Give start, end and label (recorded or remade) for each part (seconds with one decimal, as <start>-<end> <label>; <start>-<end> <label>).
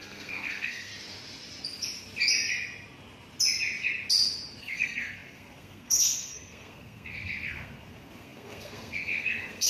0.0-0.9 remade; 0.9-4.6 recorded; 4.6-9.7 remade